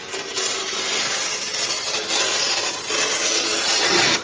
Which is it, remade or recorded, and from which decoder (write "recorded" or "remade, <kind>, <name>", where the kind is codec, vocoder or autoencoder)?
recorded